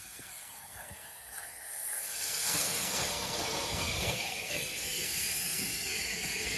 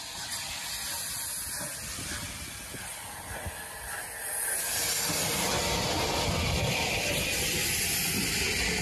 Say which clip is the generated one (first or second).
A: first